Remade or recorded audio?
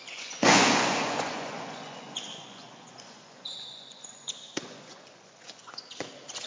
remade